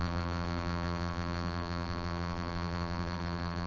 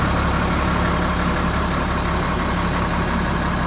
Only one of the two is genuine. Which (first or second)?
second